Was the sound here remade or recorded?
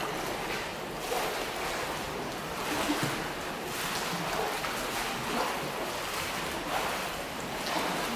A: recorded